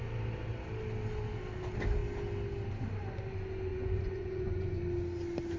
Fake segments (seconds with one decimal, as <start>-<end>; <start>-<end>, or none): 3.7-4.8